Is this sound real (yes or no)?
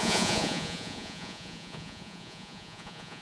no